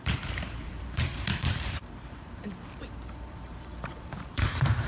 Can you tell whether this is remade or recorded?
remade